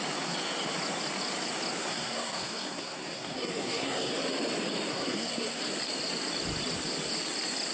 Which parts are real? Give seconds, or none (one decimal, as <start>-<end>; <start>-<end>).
0.0-1.8; 4.1-4.9; 5.6-7.7